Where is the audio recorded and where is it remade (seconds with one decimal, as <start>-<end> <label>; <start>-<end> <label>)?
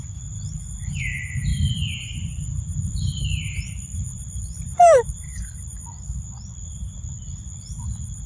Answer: 0.0-1.5 recorded; 1.5-5.8 remade; 5.8-6.7 recorded; 6.7-7.4 remade; 7.4-8.3 recorded